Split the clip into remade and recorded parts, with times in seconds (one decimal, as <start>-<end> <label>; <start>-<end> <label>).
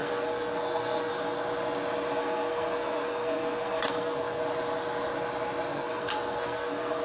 0.0-1.1 remade; 1.1-2.2 recorded; 2.2-4.4 remade; 4.4-5.7 recorded; 5.7-7.0 remade